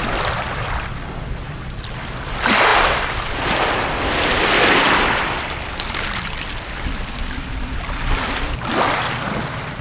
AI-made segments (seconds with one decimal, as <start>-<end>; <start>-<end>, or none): none